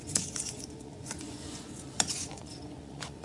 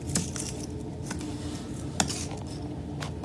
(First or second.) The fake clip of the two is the first